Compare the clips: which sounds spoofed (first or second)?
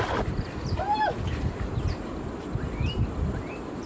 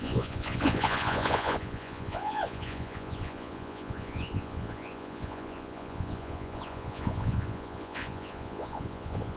second